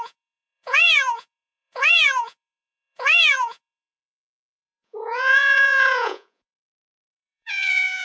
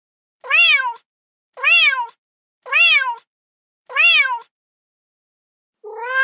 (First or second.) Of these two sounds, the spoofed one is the first